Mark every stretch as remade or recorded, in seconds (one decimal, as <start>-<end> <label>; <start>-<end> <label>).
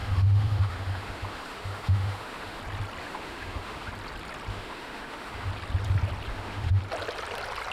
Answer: 0.0-2.6 remade; 2.6-3.0 recorded; 3.0-3.9 remade; 3.9-4.5 recorded; 4.5-5.5 remade; 5.5-6.3 recorded; 6.3-6.8 remade; 6.8-7.7 recorded